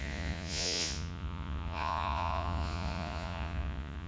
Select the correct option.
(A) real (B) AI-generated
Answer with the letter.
B